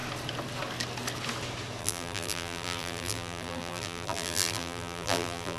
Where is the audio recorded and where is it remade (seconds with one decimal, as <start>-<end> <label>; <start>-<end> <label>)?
0.0-1.8 recorded; 1.8-5.6 remade

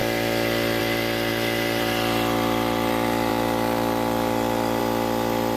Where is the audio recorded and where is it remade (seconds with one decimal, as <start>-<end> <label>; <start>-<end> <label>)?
0.0-1.3 recorded; 1.3-2.9 remade; 2.9-5.6 recorded

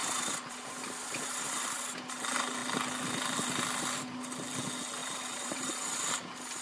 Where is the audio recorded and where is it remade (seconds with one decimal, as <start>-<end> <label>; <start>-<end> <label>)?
0.0-1.8 remade; 1.8-5.0 recorded; 5.0-5.7 remade; 5.7-6.6 recorded

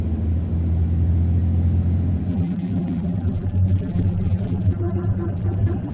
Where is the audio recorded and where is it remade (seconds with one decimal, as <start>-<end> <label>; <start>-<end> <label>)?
0.0-2.3 recorded; 2.3-5.9 remade

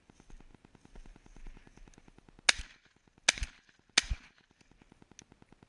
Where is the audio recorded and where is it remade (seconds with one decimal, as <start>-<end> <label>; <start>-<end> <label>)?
0.0-5.7 recorded

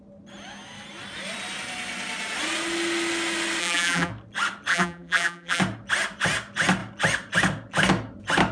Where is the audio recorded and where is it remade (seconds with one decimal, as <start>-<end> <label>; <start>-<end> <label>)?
0.0-3.6 recorded; 3.6-4.1 remade; 4.1-4.7 recorded; 4.7-5.6 remade; 5.6-8.5 recorded